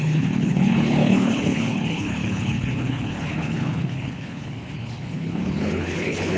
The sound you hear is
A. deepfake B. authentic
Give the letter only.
A